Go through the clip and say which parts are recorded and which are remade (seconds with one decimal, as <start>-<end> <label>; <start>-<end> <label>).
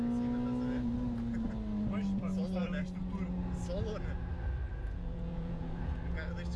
0.0-4.7 recorded; 4.7-5.9 remade; 5.9-6.6 recorded